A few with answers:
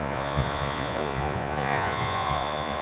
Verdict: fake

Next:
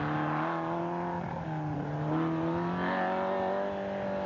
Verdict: real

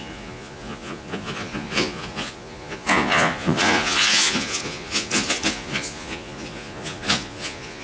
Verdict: fake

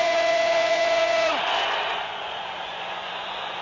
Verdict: fake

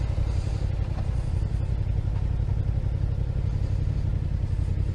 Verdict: real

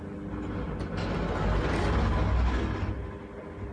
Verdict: real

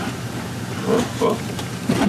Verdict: real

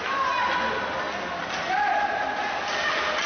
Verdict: real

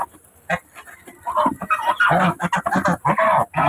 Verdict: real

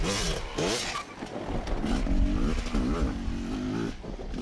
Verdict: real